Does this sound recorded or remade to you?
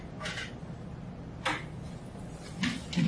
recorded